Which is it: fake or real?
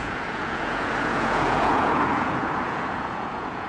fake